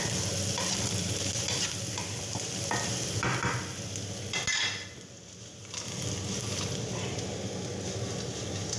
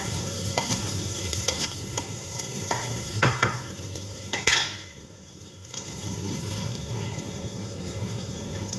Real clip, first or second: first